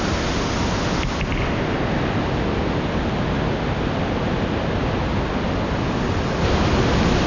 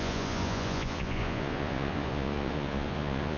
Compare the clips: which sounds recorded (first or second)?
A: first